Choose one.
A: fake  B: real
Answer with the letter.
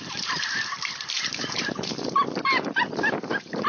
A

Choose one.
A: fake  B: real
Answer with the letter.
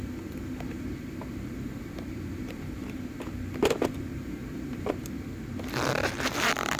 A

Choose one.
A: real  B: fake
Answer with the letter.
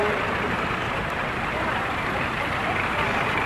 B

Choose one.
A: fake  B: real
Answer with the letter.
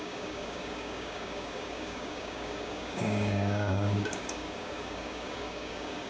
A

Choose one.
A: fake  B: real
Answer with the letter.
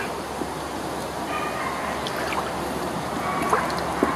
B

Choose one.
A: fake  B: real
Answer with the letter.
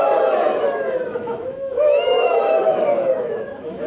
A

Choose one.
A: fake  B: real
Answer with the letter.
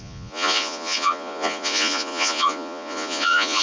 A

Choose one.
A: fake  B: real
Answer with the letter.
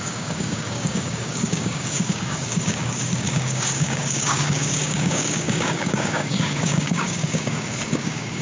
A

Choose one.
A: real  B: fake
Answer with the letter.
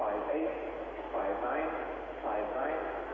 A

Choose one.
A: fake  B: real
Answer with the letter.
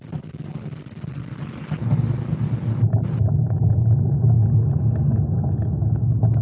B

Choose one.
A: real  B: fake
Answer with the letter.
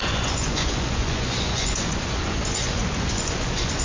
B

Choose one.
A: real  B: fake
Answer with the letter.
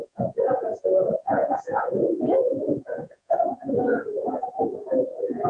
B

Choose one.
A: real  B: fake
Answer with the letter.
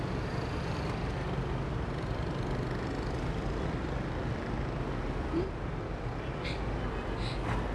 A